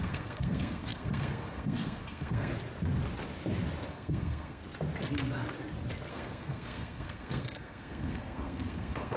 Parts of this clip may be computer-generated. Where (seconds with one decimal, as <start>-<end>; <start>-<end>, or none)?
0.0-2.5; 3.9-4.6; 6.1-9.2